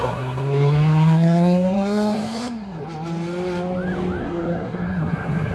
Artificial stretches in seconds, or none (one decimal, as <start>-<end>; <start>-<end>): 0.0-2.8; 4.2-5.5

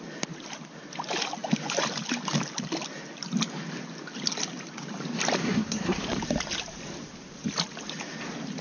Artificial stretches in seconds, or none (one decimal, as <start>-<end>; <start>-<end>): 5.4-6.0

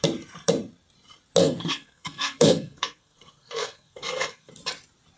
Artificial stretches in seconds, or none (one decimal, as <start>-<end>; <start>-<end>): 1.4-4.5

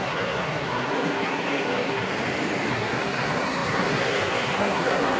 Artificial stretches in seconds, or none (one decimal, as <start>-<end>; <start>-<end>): 0.0-2.1; 2.7-5.2

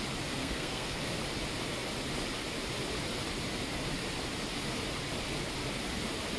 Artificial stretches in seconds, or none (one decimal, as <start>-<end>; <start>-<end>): 0.4-1.0

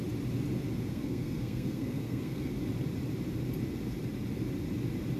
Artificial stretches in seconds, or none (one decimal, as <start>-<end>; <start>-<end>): 0.9-2.5